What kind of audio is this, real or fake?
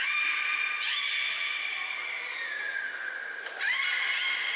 real